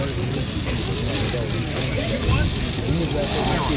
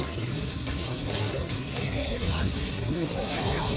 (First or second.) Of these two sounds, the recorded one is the first